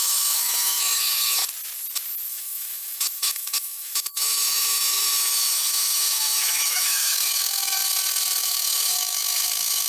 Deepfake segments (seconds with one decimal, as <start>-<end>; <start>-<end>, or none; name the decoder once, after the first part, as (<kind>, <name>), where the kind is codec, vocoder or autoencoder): 0.0-1.4 (autoencoder, DAC-VAE); 2.3-7.8; 8.4-9.9